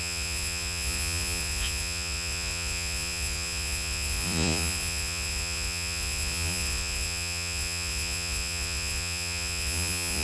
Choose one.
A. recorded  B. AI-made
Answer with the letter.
B